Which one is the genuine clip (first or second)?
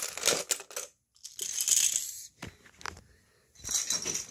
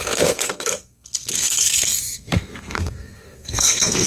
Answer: first